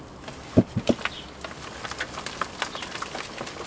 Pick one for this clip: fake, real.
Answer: real